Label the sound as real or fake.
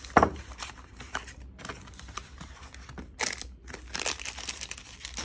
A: real